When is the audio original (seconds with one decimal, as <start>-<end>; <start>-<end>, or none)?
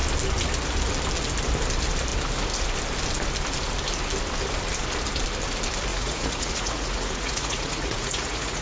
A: 0.0-5.9